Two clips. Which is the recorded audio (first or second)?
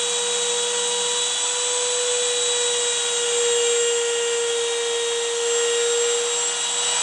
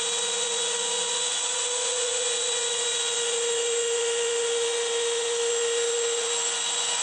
first